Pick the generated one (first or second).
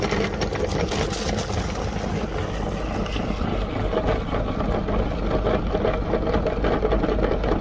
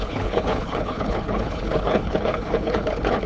second